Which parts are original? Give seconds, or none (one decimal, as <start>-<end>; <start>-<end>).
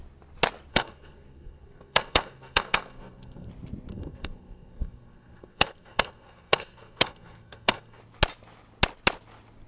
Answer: 0.0-0.7; 3.5-3.9; 8.0-9.7